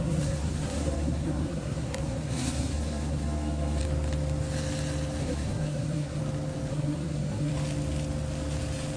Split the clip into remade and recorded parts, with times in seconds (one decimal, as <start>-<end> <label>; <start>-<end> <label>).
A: 0.0-3.8 remade; 3.8-5.2 recorded; 5.2-6.2 remade; 6.2-6.7 recorded; 6.7-7.5 remade; 7.5-9.0 recorded